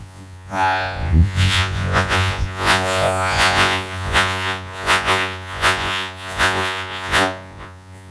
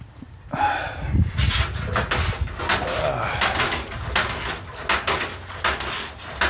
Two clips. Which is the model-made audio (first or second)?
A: first